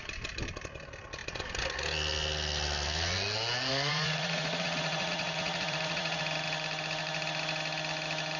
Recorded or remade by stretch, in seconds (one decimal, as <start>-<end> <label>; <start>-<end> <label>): 0.0-3.7 recorded; 3.7-6.2 remade; 6.2-8.4 recorded